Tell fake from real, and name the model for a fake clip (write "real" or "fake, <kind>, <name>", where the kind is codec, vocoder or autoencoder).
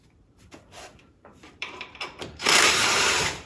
fake, vocoder, BigVGAN v2